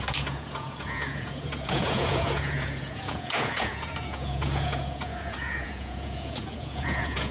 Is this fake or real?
fake